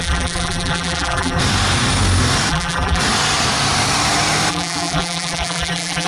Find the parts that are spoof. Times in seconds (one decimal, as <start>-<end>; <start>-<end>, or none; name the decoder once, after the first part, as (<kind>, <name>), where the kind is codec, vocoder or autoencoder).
0.0-1.4 (vocoder, BigVGAN v2); 2.5-3.0; 4.5-6.1